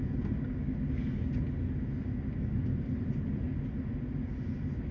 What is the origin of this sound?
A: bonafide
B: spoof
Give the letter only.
A